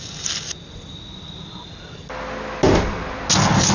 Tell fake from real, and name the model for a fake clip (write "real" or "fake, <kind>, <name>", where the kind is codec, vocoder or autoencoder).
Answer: real